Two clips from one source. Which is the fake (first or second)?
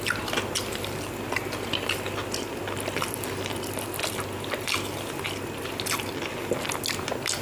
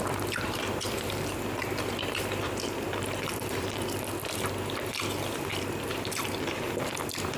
second